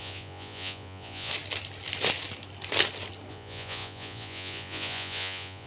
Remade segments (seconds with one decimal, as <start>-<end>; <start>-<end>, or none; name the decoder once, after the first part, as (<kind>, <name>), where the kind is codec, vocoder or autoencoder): 0.0-1.3 (vocoder, Vocos); 3.3-5.7